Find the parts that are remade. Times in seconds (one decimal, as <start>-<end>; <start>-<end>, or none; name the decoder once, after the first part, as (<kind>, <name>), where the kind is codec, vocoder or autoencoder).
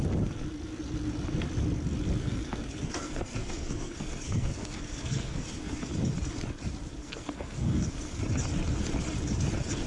2.2-5.9 (codec, SNAC); 7.0-8.2